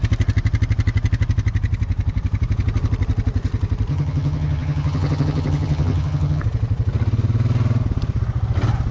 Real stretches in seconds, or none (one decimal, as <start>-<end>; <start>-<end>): 0.0-3.9; 6.4-8.9